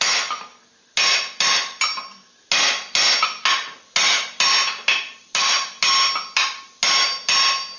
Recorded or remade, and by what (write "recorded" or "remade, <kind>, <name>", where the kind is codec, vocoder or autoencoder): recorded